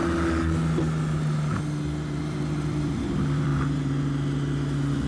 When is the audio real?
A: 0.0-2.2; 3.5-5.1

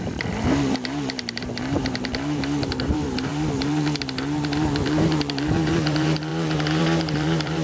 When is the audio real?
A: none